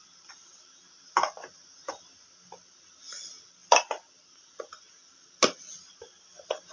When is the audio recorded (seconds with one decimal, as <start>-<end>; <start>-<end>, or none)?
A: 0.0-6.7